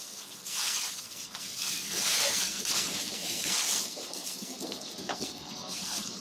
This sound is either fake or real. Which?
fake